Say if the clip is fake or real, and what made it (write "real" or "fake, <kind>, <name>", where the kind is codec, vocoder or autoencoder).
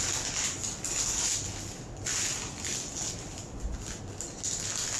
real